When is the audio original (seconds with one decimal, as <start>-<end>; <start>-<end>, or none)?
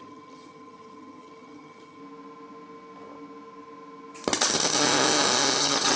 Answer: 2.0-5.6